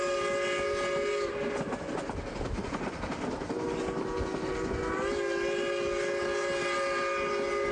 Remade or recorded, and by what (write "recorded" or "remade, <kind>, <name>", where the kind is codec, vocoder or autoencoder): recorded